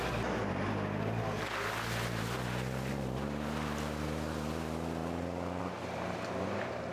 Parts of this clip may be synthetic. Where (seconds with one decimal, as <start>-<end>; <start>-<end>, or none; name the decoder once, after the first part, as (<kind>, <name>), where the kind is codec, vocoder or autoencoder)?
none